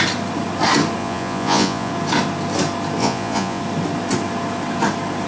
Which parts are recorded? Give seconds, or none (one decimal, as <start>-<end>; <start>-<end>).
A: 0.0-1.0; 1.9-3.0; 3.6-5.3